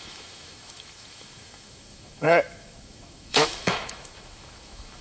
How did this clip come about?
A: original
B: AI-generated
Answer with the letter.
B